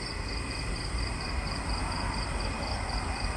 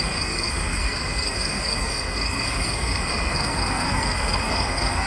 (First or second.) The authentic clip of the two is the first